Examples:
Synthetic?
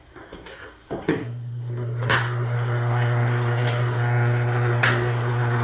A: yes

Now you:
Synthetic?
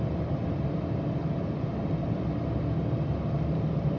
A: no